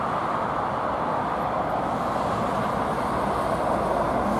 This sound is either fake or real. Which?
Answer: real